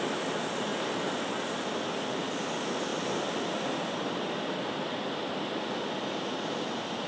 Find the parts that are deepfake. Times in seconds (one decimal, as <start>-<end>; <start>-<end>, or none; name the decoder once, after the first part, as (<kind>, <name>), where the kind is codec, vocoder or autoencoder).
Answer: none